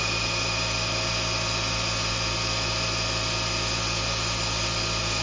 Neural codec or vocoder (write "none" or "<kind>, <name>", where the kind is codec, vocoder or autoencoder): none